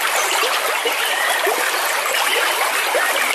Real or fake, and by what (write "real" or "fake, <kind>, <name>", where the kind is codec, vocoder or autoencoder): real